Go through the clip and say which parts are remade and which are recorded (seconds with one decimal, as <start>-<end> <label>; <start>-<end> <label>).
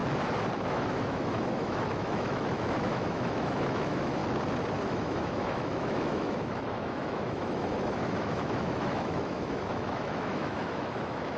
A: 0.0-0.7 recorded; 0.7-4.2 remade; 4.2-4.9 recorded; 4.9-11.4 remade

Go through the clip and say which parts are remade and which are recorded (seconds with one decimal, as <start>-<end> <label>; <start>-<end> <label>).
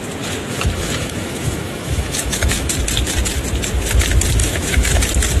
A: 0.0-0.5 recorded; 0.5-2.7 remade; 2.7-4.4 recorded; 4.4-5.0 remade; 5.0-5.4 recorded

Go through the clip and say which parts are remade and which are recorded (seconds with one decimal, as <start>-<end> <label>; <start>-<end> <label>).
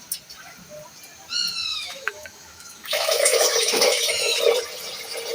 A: 0.0-1.7 recorded; 1.7-4.4 remade; 4.4-5.3 recorded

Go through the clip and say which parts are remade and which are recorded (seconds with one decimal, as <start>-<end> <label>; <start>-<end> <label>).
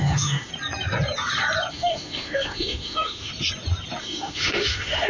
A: 0.0-0.5 remade; 0.5-1.7 recorded; 1.7-3.3 remade; 3.3-4.0 recorded; 4.0-5.1 remade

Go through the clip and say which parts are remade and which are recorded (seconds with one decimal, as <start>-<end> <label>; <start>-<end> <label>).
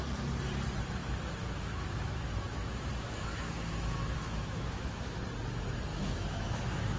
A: 0.0-1.0 recorded; 1.0-5.2 remade; 5.2-5.9 recorded; 5.9-7.0 remade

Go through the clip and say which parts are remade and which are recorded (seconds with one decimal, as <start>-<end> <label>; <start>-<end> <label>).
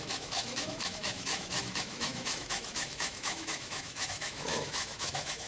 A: 0.0-5.5 remade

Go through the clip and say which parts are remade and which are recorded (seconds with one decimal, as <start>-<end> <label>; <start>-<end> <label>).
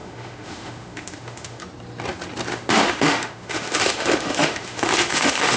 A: 0.0-1.6 remade; 1.6-2.5 recorded; 2.5-5.6 remade